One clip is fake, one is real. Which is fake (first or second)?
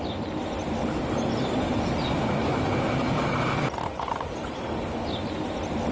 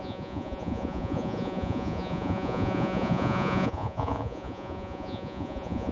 second